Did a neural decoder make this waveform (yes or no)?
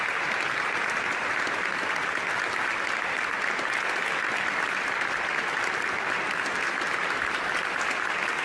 no